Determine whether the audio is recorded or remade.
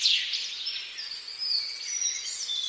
recorded